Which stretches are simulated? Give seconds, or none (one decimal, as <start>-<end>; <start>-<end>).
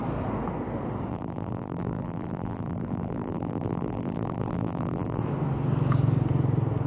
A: 1.1-5.2